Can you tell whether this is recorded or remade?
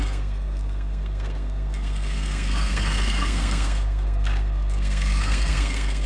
remade